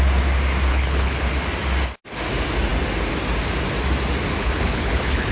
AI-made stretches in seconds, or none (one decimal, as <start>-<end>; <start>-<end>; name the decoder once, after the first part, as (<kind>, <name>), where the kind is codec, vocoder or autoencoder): 0.7-1.2 (codec, HILCodec); 4.3-5.3